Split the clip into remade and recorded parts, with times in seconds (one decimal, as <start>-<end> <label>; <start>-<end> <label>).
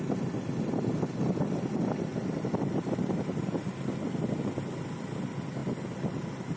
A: 0.0-6.6 recorded